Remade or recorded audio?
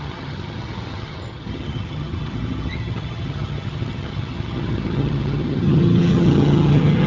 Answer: remade